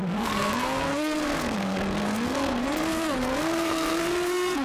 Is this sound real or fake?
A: fake